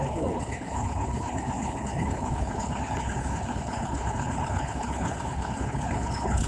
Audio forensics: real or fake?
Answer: fake